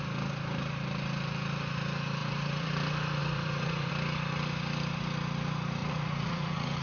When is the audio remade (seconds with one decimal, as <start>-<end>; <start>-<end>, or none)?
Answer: 2.2-2.7; 3.2-3.9; 5.8-6.8